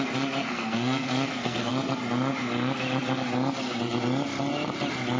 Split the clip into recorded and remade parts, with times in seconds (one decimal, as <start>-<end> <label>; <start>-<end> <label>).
0.0-0.4 recorded; 0.4-1.7 remade; 1.7-5.2 recorded